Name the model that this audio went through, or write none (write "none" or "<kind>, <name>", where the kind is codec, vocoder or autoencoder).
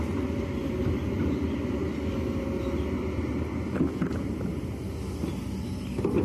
none